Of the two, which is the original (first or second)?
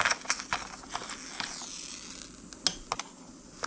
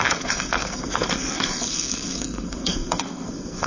first